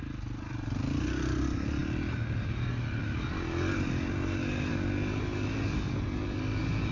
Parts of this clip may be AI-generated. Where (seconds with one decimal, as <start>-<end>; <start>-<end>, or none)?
none